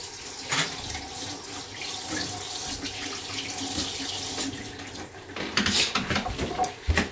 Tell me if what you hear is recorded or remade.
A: recorded